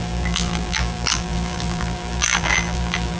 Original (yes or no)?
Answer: no